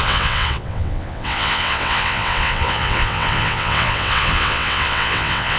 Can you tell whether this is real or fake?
fake